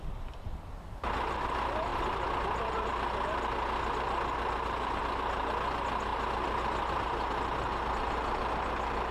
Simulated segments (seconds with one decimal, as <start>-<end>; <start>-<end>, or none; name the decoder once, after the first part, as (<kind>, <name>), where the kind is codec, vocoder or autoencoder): none